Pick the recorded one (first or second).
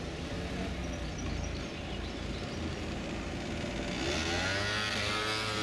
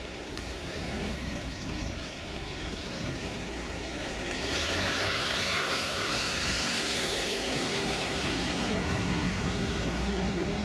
first